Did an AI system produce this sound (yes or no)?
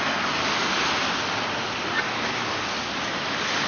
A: no